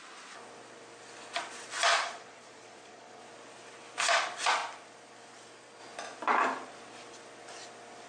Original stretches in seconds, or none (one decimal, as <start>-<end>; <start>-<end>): 0.0-1.9; 3.2-8.1